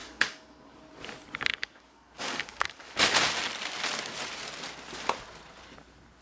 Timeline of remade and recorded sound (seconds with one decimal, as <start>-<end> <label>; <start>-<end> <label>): 0.0-0.8 remade; 0.8-1.5 recorded; 1.5-2.9 remade; 2.9-6.2 recorded